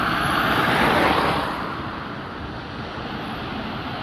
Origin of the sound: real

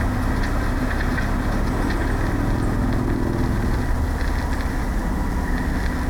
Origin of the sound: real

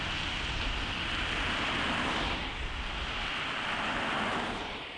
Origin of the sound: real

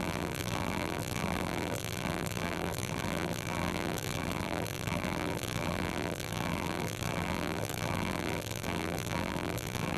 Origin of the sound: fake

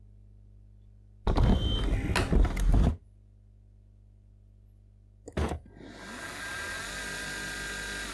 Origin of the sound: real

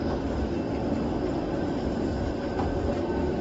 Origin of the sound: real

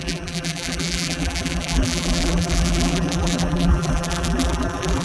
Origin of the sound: fake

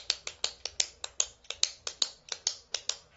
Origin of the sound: real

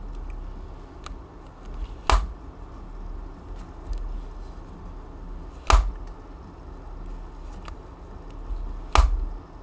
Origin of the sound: real